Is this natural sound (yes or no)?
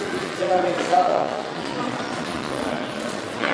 no